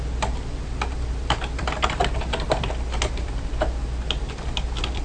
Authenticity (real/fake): real